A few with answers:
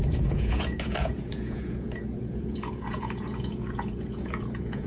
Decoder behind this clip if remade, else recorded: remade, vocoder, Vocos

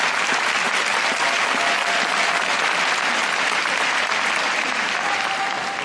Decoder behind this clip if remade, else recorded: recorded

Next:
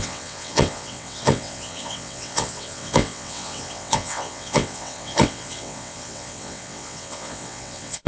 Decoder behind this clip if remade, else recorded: remade, vocoder, WaveNeXt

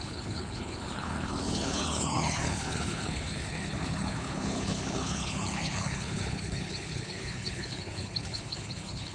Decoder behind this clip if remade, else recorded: remade, codec, HILCodec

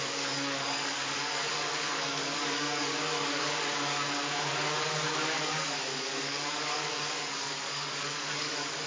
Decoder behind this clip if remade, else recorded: remade, codec, DAC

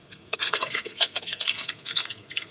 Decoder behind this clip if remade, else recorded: remade, codec, SNAC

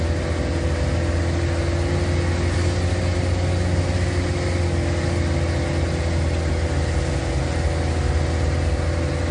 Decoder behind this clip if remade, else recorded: recorded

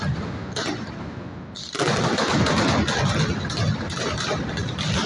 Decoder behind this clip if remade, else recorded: recorded